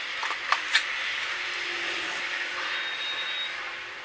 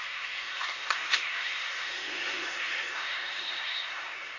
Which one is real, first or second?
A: first